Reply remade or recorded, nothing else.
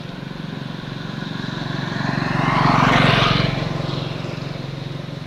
recorded